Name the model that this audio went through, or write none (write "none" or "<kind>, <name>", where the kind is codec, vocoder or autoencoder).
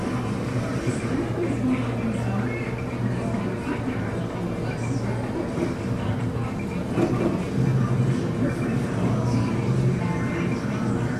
none